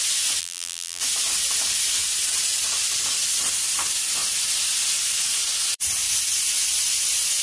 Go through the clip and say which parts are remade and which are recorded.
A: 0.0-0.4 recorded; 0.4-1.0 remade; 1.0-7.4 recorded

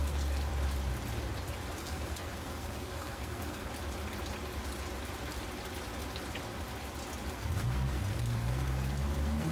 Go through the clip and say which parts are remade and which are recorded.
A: 0.0-0.5 remade; 0.5-1.8 recorded; 1.8-3.7 remade; 3.7-7.3 recorded; 7.3-9.5 remade

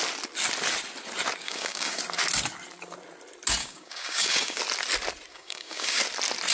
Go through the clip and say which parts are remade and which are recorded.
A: 0.0-1.4 recorded; 1.4-2.0 remade; 2.0-3.6 recorded; 3.6-4.6 remade; 4.6-5.3 recorded; 5.3-6.0 remade; 6.0-6.5 recorded

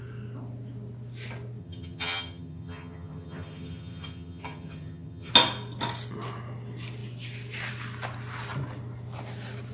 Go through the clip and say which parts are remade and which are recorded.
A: 0.0-1.6 recorded; 1.6-5.3 remade; 5.3-9.7 recorded

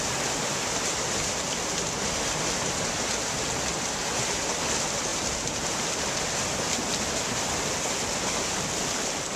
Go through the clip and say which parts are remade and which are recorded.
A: 0.0-9.4 recorded

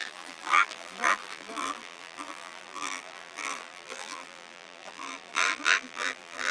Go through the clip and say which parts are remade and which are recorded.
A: 0.0-6.5 remade

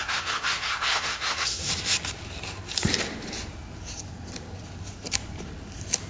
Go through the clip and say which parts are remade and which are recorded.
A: 0.0-1.7 remade; 1.7-6.1 recorded